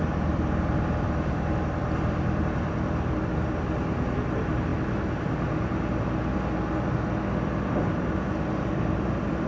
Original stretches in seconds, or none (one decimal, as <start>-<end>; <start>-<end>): 4.7-8.7